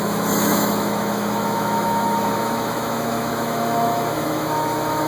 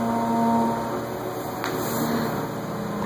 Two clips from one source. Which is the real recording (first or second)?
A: second